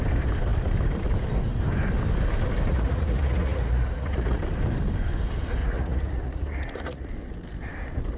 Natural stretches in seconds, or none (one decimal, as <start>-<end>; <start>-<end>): 0.0-2.7; 4.4-5.6; 7.1-8.2